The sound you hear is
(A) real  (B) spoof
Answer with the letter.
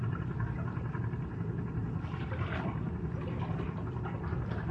A